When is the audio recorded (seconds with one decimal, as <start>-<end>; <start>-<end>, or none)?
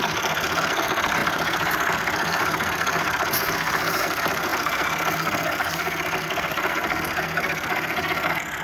none